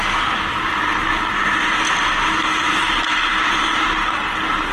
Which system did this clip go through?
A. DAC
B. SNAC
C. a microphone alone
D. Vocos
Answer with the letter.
C